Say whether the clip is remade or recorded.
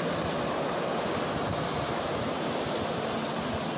recorded